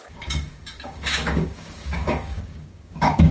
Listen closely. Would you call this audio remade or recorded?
remade